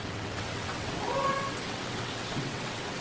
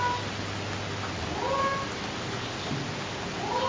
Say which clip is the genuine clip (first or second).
second